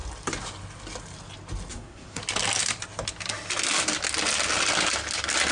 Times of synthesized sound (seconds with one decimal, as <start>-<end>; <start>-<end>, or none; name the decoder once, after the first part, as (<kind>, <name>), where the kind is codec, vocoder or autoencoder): 1.7-2.2 (codec, SNAC)